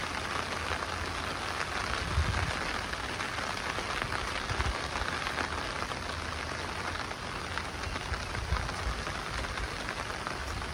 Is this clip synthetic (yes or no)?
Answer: no